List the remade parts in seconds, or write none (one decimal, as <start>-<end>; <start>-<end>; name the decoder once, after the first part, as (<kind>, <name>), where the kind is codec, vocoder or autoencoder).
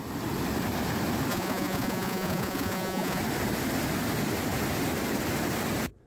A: 1.3-3.2 (vocoder, Vocos)